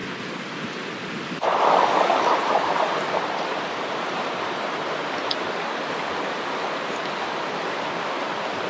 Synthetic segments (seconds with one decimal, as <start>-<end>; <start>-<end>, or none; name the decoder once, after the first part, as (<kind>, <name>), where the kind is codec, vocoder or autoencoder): 2.1-5.3 (vocoder, BigVGAN v2)